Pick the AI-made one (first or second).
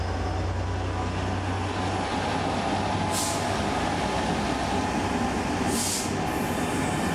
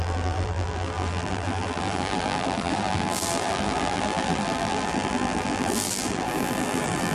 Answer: second